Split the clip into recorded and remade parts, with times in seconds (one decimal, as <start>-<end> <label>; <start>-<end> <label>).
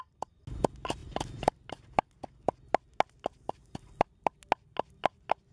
0.0-5.5 recorded